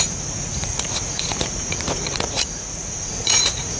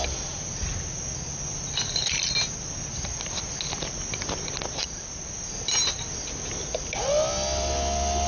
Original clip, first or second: second